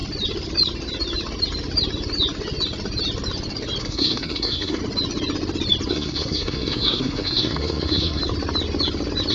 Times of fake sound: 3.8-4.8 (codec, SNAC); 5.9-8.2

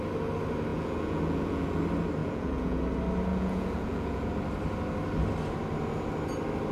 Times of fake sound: 0.7-1.8 (vocoder, Vocos); 2.2-2.8; 3.3-4.3

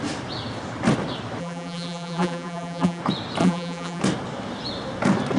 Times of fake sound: 1.4-3.0 (vocoder, BigVGAN v2); 3.4-4.0

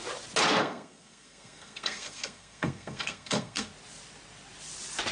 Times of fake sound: 0.6-3.7 (codec, SNAC)

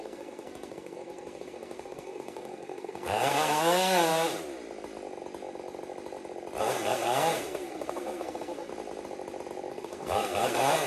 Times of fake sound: 0.0-4.1 (codec, SNAC); 6.6-8.7; 9.7-10.9

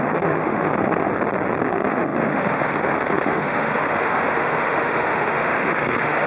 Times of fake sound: 0.0-1.1 (autoencoder, DAC-VAE); 1.6-6.3

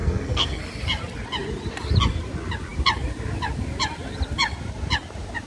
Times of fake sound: 0.0-0.6 (codec, SNAC)